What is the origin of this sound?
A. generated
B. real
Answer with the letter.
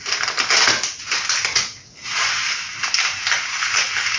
B